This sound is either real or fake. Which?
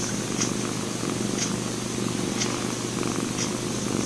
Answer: real